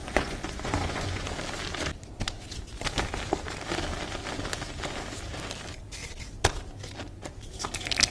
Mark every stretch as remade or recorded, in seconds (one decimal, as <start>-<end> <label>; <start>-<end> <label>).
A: 0.0-1.3 remade; 1.3-8.1 recorded